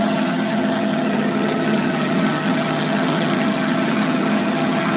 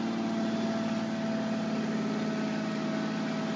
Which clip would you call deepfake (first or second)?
first